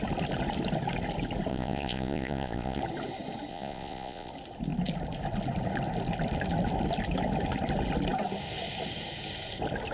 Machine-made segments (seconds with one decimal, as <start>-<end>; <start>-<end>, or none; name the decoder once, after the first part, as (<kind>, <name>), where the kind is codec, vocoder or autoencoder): 1.5-2.8 (vocoder, Vocos); 3.5-4.3

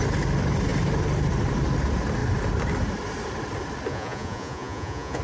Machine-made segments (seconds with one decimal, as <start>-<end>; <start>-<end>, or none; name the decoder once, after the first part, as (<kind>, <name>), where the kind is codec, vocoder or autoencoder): 3.9-5.2 (vocoder, Vocos)

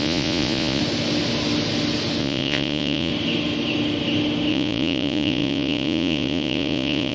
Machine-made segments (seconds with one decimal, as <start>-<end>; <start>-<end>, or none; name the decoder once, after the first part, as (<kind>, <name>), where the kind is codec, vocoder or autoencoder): 0.0-0.8 (vocoder, Vocos); 2.2-3.1; 4.5-7.1

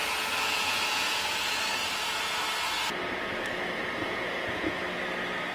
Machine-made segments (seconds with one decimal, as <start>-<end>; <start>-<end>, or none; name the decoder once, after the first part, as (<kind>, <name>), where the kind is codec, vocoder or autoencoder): 0.0-2.4 (vocoder, Vocos); 4.0-4.8